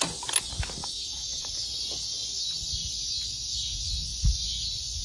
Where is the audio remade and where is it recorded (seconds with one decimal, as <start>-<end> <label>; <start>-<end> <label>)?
0.0-0.8 recorded; 0.8-1.5 remade; 1.5-5.0 recorded